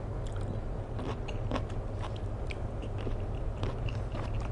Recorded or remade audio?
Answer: recorded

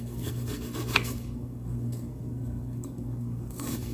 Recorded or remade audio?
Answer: remade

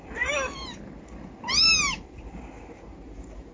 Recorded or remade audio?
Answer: recorded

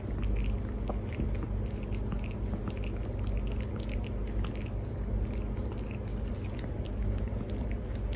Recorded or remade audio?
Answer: recorded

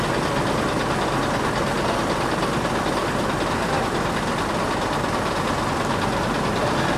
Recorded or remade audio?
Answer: recorded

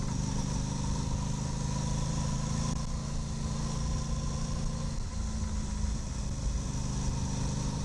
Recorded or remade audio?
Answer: recorded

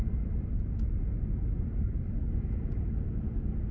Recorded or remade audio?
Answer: recorded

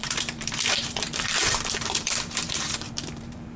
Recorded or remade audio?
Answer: remade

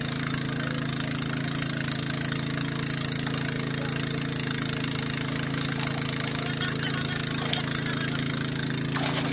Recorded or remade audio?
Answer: recorded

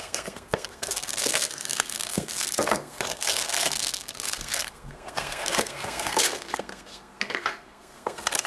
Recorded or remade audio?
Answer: remade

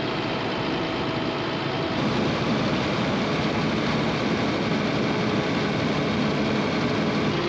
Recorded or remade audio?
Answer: recorded